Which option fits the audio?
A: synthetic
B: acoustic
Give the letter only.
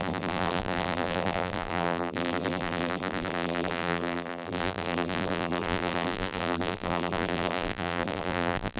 A